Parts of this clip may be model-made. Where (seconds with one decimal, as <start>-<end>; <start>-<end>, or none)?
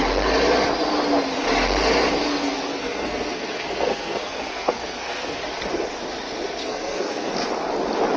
2.4-5.4; 6.6-7.3